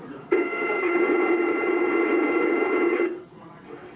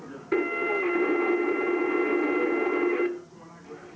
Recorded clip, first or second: second